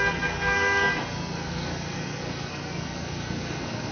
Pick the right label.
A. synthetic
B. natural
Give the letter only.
A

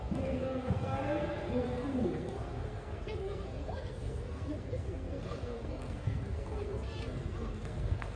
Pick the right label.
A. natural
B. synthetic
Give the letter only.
B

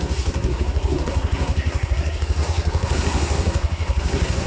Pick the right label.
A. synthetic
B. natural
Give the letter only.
A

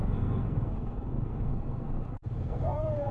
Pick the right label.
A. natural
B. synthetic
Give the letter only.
B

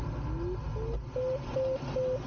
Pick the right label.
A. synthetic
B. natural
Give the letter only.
B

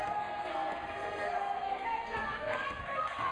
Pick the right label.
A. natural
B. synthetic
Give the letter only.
B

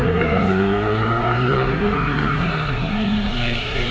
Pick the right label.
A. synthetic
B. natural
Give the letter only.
A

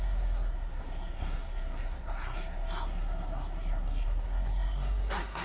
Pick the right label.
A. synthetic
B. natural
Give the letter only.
A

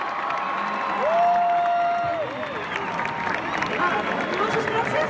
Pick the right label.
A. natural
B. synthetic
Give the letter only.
A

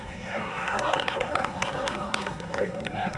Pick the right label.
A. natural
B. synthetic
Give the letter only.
B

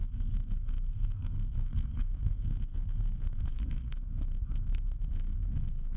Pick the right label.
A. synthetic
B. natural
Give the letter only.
A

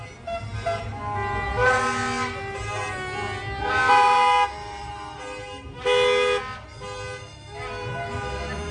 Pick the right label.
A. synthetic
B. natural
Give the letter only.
B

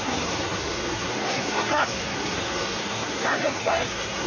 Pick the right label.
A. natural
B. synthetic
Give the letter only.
B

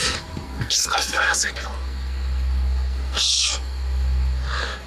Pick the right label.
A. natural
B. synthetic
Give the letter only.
B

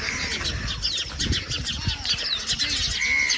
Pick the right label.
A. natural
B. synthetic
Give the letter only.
A